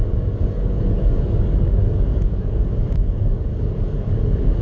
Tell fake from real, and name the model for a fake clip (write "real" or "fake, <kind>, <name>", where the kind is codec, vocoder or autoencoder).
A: fake, codec, DAC